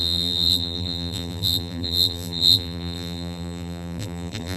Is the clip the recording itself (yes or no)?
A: no